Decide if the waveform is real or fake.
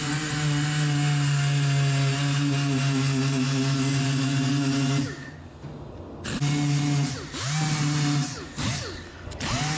real